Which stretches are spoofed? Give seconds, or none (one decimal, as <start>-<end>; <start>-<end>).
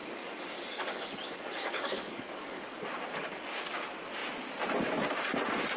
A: 0.0-2.8